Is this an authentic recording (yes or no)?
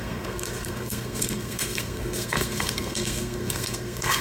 no